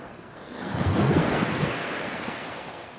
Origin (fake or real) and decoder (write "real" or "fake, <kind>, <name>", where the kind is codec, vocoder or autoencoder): fake, codec, SNAC